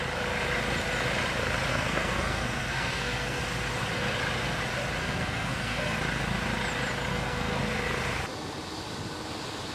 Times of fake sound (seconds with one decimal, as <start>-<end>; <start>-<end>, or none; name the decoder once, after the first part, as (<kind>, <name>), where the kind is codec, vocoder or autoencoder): 1.7-3.4 (codec, SNAC); 5.0-6.0; 7.1-7.6